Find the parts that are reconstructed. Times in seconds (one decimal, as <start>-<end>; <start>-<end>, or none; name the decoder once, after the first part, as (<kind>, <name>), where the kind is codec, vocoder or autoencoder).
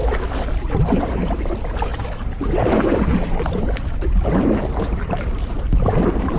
0.8-6.4 (vocoder, BigVGAN v2)